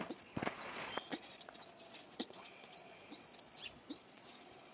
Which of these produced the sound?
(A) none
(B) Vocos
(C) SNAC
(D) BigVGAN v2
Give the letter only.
B